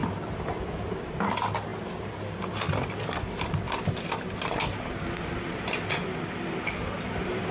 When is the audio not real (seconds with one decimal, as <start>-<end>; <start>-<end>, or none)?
none